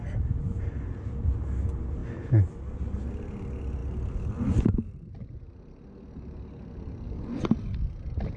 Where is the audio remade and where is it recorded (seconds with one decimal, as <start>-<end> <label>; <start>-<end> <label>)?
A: 0.0-8.4 recorded